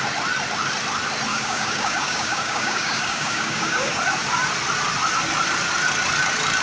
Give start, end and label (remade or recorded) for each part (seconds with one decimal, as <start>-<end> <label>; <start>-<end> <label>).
0.0-1.3 recorded; 1.3-4.0 remade; 4.0-6.6 recorded